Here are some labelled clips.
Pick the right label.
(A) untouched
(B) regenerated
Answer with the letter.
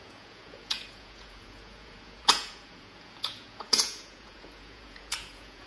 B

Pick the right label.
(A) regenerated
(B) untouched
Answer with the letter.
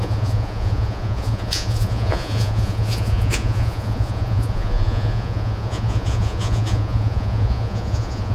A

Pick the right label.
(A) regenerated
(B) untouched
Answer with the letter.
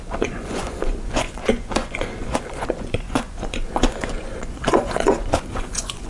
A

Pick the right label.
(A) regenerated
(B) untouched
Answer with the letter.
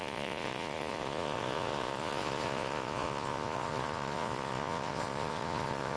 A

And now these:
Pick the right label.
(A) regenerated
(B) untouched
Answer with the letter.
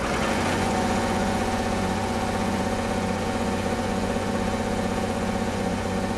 A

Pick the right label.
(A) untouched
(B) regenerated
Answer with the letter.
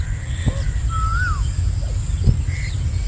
A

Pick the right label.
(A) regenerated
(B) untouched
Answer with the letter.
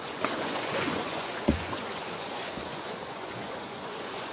A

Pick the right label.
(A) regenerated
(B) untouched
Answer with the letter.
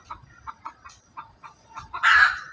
A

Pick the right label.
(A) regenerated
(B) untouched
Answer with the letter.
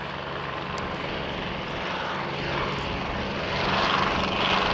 B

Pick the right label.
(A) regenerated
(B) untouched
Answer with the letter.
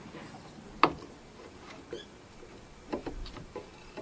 B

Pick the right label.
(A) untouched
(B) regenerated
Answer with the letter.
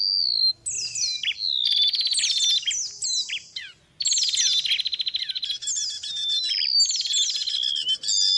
A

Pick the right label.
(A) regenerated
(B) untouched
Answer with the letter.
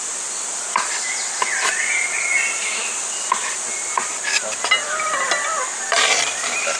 B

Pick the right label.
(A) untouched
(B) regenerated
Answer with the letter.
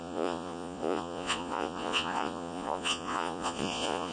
B